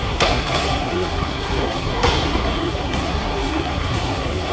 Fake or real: fake